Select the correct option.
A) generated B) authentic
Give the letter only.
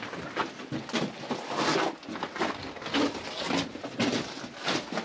B